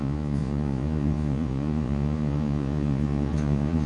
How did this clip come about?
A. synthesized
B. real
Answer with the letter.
A